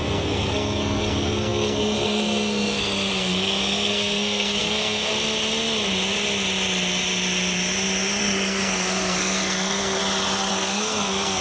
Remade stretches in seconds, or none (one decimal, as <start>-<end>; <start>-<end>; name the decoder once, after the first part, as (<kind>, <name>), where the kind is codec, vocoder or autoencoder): 0.0-5.1 (codec, SNAC); 8.2-10.0; 10.5-11.4